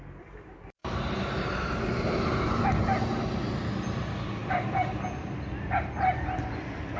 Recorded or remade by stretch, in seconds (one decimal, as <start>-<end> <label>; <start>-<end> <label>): 0.0-0.8 recorded; 0.8-2.6 remade; 2.6-7.0 recorded